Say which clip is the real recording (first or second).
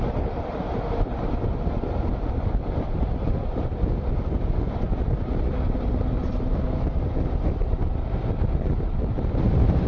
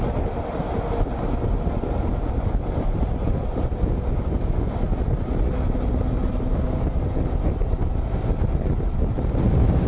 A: second